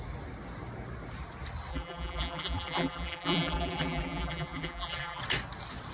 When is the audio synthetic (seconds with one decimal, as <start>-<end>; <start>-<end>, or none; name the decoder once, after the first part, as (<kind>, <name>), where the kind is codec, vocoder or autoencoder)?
1.7-5.2 (vocoder, BigVGAN v2)